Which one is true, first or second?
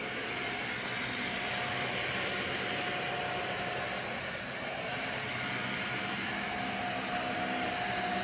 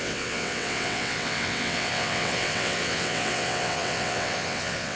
first